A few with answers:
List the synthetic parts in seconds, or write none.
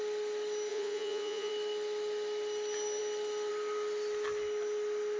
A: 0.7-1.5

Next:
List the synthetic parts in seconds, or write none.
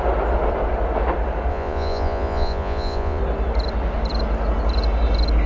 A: 1.5-3.2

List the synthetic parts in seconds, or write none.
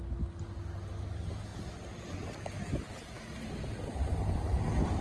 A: none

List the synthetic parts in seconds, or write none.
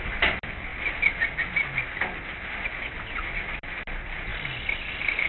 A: none